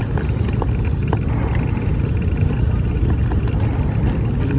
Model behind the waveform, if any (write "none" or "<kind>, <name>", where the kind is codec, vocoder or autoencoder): none